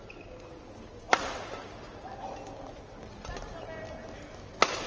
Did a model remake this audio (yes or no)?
no